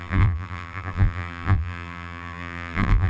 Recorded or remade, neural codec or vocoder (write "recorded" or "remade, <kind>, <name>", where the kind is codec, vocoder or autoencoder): remade, vocoder, BigVGAN v2